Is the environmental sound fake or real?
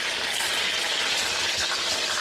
real